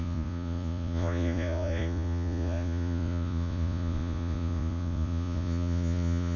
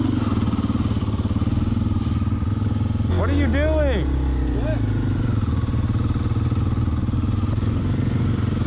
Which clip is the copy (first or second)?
first